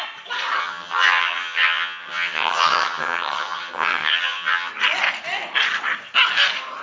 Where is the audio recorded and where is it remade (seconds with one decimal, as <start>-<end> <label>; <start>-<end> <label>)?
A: 0.0-0.6 recorded; 0.6-4.7 remade; 4.7-6.8 recorded